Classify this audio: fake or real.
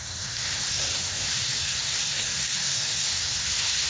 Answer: fake